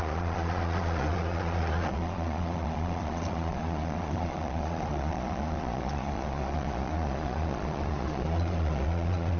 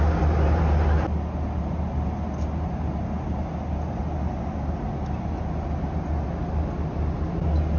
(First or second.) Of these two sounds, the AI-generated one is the first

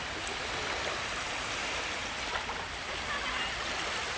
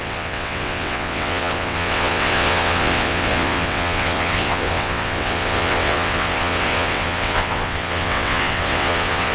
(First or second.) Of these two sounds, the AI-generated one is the second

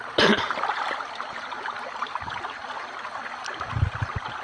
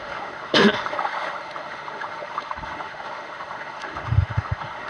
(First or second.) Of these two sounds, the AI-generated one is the second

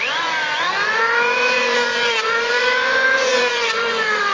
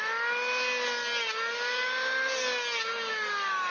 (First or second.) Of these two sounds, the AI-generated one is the first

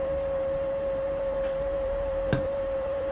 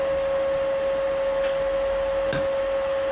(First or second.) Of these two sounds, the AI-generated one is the first